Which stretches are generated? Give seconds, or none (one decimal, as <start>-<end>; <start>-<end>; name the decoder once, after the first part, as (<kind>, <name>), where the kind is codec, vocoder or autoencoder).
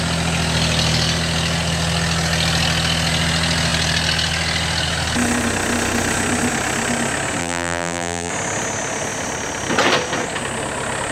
7.4-8.3 (vocoder, BigVGAN v2)